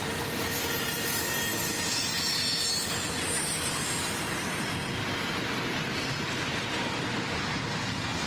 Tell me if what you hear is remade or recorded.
recorded